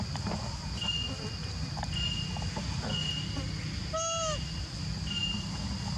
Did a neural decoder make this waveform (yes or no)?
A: no